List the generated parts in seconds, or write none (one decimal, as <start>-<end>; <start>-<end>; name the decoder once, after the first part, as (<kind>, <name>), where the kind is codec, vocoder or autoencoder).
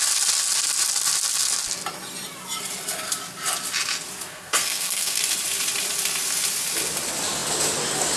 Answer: 4.3-5.2 (codec, SNAC)